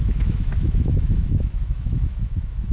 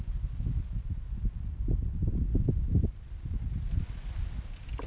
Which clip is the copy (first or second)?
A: first